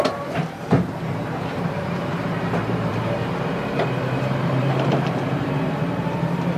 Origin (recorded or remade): remade